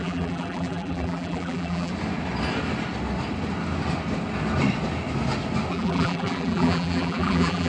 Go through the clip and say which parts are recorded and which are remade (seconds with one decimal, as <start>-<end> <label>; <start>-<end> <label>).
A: 0.0-1.9 remade; 1.9-5.7 recorded; 5.7-7.7 remade